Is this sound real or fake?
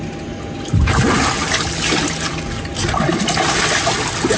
real